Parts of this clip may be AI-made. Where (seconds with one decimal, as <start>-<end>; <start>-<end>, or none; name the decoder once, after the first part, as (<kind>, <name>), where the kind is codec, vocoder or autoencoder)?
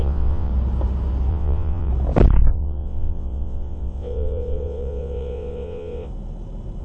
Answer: 0.0-0.5 (vocoder, WaveNeXt); 1.3-1.9; 2.5-6.1